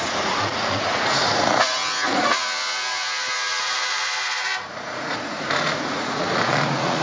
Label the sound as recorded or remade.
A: remade